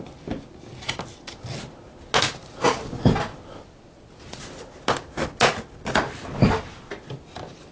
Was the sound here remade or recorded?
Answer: recorded